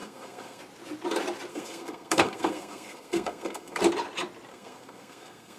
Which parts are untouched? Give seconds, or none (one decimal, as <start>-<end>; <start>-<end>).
0.6-1.5; 3.8-4.5